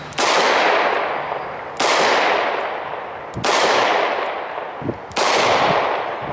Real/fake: real